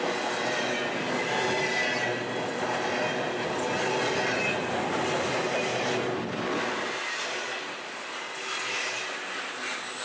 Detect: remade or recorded recorded